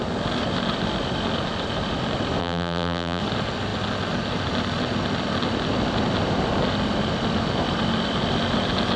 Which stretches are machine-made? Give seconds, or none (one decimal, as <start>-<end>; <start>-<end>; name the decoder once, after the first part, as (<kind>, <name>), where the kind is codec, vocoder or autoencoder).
2.4-3.2 (vocoder, BigVGAN v2)